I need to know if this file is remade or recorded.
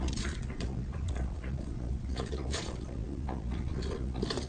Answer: remade